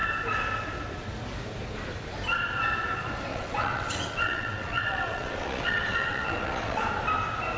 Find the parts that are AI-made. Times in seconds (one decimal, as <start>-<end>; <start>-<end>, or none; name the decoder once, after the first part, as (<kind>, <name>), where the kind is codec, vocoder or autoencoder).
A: 3.3-6.8 (vocoder, WaveNeXt)